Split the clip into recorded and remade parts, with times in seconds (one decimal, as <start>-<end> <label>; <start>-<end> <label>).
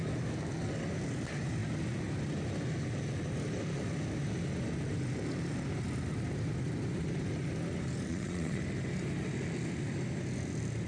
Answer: 0.0-8.1 recorded; 8.1-8.6 remade; 8.6-10.9 recorded